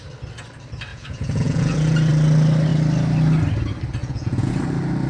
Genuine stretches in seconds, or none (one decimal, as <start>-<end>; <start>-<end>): 0.0-0.9; 2.1-4.0; 4.5-5.1